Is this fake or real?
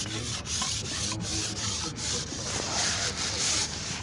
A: real